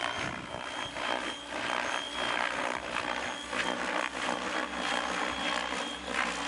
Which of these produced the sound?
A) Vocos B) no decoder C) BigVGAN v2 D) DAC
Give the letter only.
B